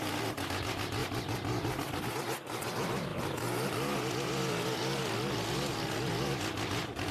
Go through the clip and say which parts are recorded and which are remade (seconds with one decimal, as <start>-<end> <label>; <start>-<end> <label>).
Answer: 0.0-7.1 recorded